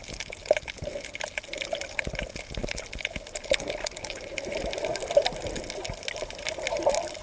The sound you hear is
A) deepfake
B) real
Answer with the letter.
B